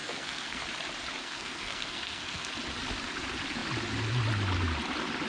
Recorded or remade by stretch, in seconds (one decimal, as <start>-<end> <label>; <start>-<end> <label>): 0.0-0.6 remade; 0.6-1.2 recorded; 1.2-2.5 remade; 2.5-5.3 recorded